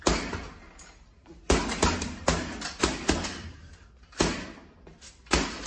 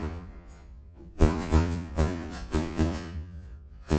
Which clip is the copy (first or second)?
second